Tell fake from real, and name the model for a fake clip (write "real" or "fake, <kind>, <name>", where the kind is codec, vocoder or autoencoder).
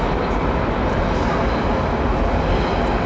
real